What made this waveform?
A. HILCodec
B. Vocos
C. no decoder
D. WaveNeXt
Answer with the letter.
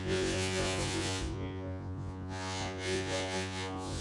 B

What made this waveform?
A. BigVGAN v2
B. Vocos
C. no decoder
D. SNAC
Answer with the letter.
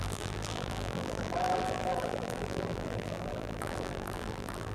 A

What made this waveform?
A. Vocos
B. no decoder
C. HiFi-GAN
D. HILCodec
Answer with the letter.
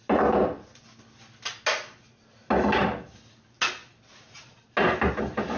B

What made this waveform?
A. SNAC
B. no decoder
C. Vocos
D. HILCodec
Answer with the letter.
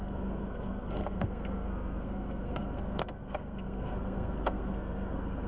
A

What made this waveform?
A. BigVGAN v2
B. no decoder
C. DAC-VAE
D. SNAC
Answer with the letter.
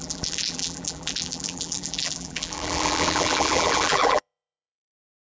A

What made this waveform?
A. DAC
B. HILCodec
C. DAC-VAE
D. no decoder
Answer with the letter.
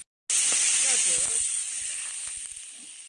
D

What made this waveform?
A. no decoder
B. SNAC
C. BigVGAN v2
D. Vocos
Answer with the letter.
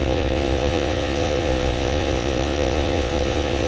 D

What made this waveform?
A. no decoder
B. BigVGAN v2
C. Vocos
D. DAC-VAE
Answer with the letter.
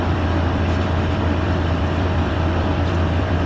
B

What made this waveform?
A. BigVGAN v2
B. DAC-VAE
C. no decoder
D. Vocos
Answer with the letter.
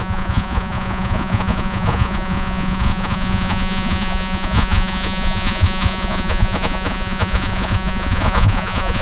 D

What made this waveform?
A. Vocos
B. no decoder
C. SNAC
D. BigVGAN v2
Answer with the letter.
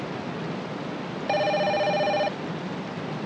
B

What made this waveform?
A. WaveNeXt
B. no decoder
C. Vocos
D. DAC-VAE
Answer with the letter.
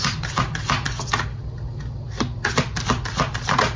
B